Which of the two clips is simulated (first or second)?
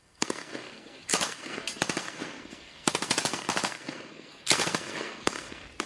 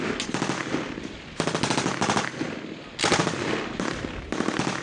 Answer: first